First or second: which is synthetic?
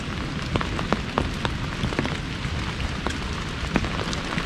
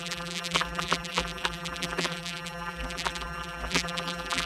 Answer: second